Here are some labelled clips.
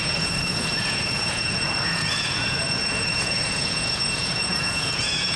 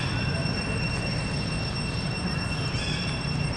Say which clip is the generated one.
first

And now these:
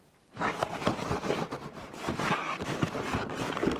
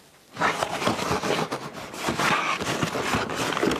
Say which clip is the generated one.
first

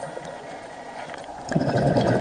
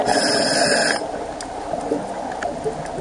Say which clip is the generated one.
first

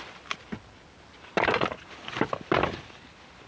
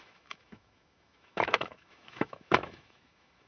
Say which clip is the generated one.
second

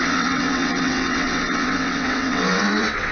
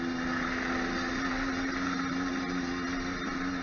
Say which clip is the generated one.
first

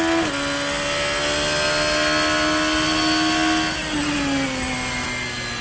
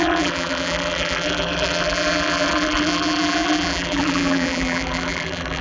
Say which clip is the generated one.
second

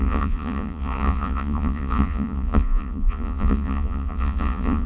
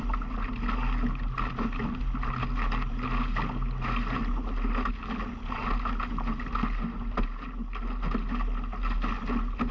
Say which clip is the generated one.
first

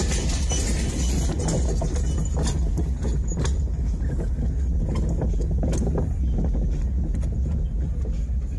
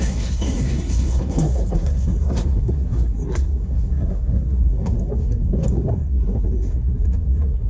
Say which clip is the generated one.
second